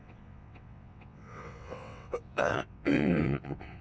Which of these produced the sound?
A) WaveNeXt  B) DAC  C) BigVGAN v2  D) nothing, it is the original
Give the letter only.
A